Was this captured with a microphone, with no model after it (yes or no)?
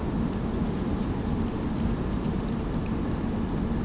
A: yes